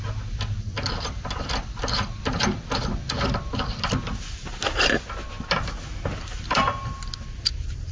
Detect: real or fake real